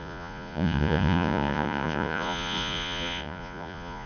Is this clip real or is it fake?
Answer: fake